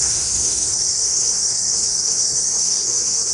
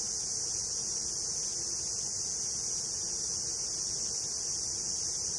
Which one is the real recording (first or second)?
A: second